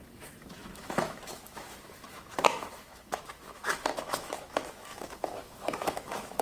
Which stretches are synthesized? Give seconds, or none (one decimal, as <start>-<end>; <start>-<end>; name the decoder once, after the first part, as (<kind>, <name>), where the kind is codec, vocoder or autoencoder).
0.0-6.4 (autoencoder, DAC-VAE)